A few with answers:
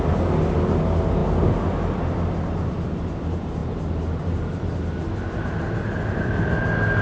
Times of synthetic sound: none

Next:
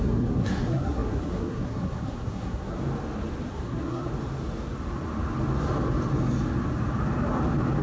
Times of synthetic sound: 0.0-2.8 (codec, SNAC); 3.5-4.1

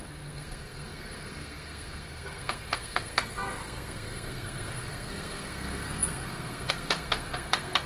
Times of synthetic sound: 0.0-7.9 (codec, SNAC)

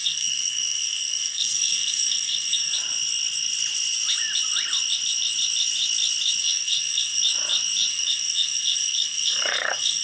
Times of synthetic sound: 0.0-2.7 (codec, SNAC); 6.4-7.2; 7.9-10.0

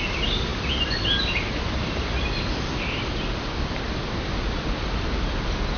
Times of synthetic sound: none